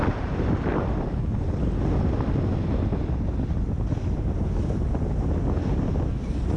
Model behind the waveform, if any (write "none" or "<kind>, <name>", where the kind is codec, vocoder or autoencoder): none